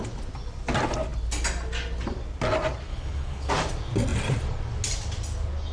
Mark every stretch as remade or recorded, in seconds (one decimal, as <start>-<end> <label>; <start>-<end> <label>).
0.0-2.9 recorded; 2.9-3.5 remade; 3.5-5.7 recorded